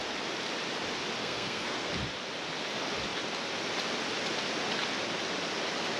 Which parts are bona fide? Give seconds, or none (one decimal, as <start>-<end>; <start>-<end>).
0.0-1.2; 1.9-6.0